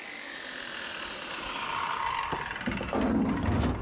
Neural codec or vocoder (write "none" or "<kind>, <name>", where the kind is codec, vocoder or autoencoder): none